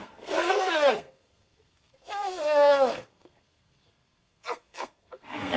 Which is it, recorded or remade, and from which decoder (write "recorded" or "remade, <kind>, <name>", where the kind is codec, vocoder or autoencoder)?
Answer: remade, codec, SNAC